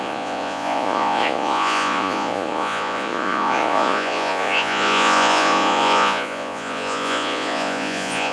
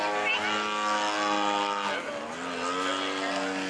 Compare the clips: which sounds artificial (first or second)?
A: first